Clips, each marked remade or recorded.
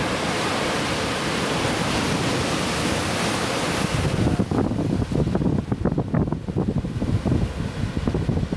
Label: recorded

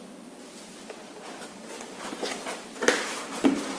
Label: recorded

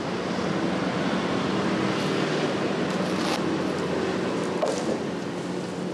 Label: recorded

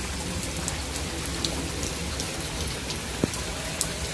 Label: recorded